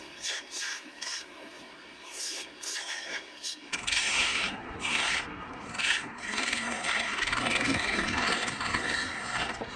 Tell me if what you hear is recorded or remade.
remade